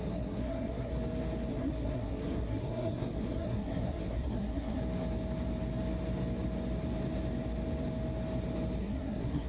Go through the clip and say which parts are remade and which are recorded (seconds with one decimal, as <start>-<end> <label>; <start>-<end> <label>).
0.0-0.9 remade; 0.9-1.5 recorded; 1.5-4.8 remade; 4.8-8.8 recorded; 8.8-9.5 remade